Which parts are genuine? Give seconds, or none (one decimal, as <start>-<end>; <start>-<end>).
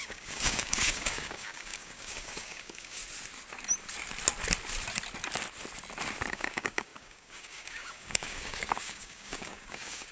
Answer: 3.0-6.3